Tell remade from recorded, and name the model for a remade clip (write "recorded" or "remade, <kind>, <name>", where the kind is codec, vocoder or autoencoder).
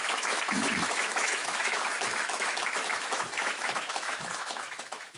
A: remade, autoencoder, DAC-VAE